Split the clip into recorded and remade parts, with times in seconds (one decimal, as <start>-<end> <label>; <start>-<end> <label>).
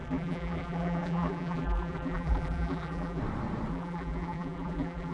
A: 0.0-3.2 remade; 3.2-3.7 recorded; 3.7-5.1 remade